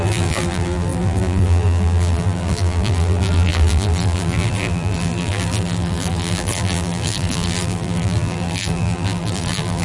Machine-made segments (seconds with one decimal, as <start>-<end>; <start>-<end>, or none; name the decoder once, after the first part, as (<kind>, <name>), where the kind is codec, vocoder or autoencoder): 0.0-9.8 (vocoder, BigVGAN v2)